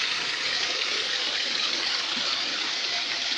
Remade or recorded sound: remade